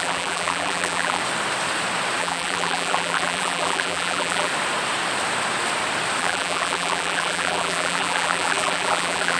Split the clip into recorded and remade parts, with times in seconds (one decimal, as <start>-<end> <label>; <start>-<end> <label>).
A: 0.0-1.2 remade; 1.2-2.2 recorded; 2.2-4.5 remade; 4.5-6.2 recorded; 6.2-9.4 remade